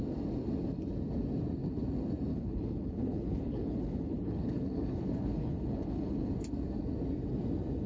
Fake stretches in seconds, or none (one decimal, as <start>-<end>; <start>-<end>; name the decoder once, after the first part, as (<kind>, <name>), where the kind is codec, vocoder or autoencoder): 2.3-6.3 (codec, HILCodec)